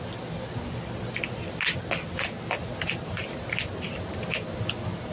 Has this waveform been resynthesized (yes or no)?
no